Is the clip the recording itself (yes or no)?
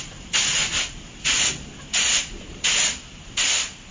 yes